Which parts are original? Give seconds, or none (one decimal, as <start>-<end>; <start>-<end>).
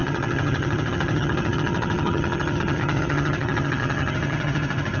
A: none